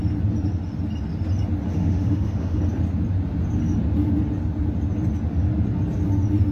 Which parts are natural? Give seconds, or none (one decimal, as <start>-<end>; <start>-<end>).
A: 0.0-1.7; 2.6-6.5